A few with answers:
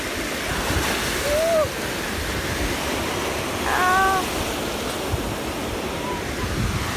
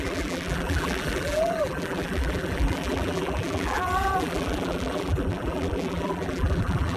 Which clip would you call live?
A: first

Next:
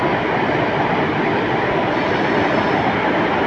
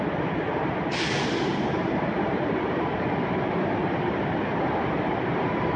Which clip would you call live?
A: first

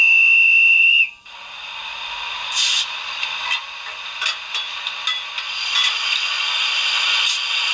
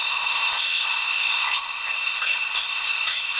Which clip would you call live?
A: first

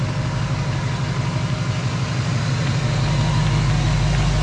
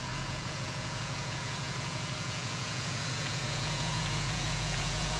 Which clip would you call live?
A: first